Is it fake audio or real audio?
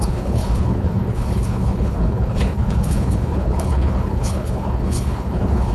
fake